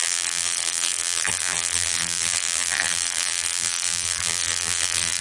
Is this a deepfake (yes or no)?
yes